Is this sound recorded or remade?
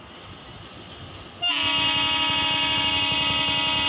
recorded